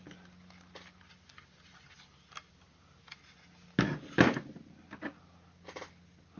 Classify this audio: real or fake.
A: real